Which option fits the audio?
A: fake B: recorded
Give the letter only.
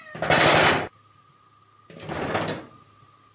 B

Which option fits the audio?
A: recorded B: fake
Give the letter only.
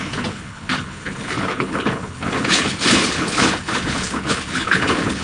B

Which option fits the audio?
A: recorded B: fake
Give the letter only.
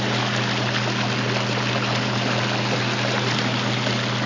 A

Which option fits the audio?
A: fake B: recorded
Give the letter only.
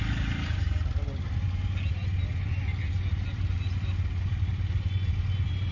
B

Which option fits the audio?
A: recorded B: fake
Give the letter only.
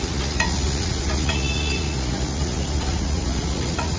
B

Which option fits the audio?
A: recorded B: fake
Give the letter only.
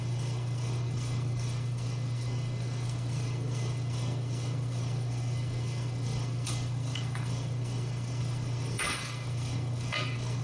B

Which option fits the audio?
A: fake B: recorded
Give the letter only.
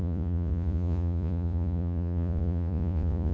A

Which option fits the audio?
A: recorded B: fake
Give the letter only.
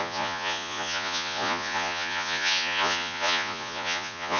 B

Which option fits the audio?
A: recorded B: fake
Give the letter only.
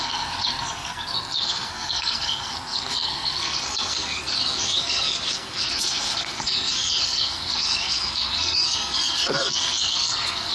B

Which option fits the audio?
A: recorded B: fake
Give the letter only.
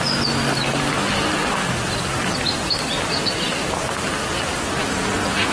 A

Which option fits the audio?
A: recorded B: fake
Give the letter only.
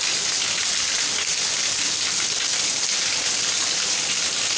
A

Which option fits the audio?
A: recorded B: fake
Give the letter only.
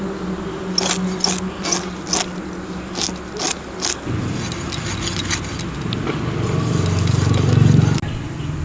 A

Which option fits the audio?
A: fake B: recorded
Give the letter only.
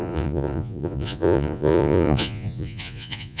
A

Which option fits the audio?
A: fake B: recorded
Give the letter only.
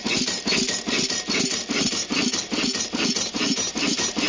B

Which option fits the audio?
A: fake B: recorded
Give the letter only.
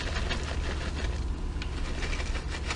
B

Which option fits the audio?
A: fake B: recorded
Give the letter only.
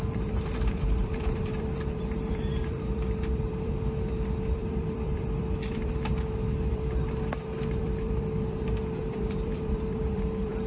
A